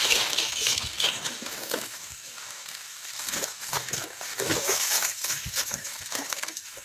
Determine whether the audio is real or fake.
fake